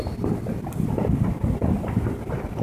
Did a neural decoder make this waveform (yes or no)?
no